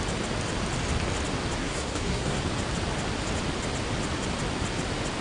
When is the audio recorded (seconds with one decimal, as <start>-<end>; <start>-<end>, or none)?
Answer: 0.0-1.6; 2.4-5.2